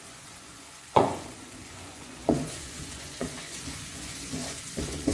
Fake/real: fake